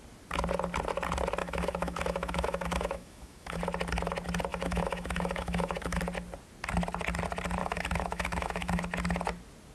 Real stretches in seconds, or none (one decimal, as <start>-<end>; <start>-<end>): 0.0-1.4; 3.6-4.5; 6.0-7.6; 8.8-9.7